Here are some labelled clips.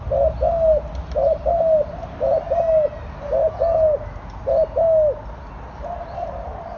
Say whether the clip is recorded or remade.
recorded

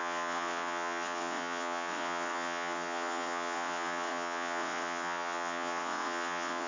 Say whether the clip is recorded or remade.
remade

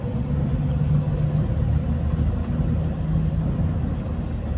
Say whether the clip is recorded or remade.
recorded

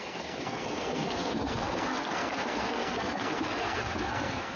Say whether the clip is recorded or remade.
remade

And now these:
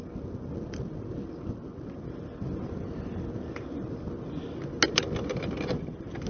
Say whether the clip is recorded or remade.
recorded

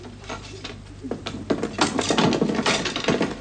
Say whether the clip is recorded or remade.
recorded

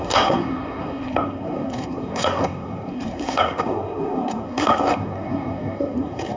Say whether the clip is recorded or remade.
remade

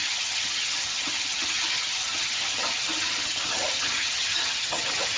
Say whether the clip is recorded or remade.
remade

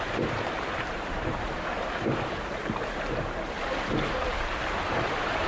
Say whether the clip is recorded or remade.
remade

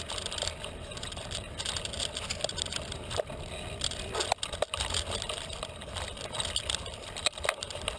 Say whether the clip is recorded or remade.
remade